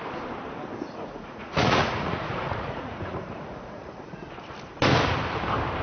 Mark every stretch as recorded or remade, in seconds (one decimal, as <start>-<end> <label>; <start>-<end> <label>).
0.0-0.8 recorded; 0.8-4.3 remade; 4.3-5.8 recorded